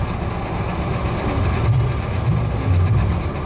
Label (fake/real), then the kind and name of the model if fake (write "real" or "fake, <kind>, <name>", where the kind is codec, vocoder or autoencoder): real